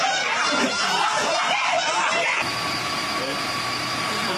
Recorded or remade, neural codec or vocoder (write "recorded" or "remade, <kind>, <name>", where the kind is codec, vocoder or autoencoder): remade, vocoder, BigVGAN v2